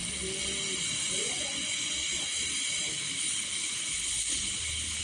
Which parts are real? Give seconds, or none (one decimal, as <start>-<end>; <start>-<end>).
0.0-1.2; 1.9-5.0